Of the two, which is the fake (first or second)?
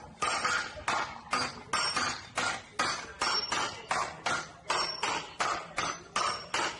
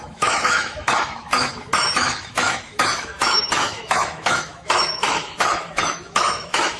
second